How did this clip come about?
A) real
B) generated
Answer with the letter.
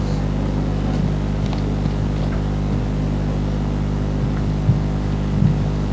A